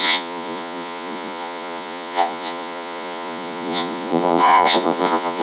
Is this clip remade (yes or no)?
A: yes